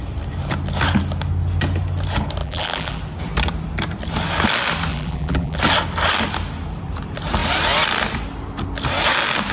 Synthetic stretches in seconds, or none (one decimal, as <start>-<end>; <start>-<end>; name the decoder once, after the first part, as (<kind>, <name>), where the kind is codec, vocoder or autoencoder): 2.4-3.0 (vocoder, BigVGAN v2); 4.9-5.6

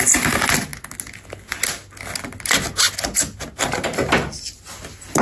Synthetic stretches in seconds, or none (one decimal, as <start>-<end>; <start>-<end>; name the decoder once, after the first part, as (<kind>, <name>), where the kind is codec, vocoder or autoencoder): none

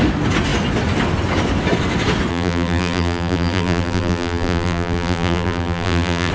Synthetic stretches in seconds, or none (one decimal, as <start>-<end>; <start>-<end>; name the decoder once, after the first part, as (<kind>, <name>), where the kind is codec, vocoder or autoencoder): 2.3-6.3 (vocoder, BigVGAN v2)

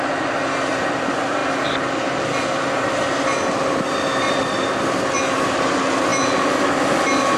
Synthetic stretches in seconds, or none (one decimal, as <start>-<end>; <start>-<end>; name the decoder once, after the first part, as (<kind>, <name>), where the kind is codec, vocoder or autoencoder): none

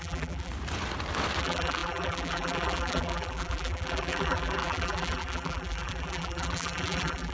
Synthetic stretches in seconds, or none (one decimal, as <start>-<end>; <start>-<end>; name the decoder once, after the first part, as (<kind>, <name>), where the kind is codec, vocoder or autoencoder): 0.0-0.5 (vocoder, BigVGAN v2); 1.4-7.3

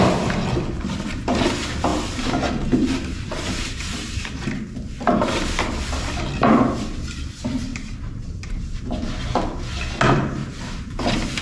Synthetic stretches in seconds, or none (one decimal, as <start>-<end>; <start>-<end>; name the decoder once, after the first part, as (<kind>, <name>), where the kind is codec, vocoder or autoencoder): 7.7-8.9 (vocoder, BigVGAN v2); 10.4-11.0

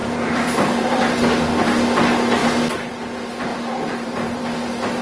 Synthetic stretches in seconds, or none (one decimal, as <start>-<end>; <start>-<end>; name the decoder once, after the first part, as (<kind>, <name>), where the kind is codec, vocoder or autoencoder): 0.0-1.2 (vocoder, BigVGAN v2); 3.5-4.4

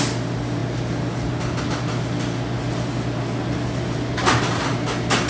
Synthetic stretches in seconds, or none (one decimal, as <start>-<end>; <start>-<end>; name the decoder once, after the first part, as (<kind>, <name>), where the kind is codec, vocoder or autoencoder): none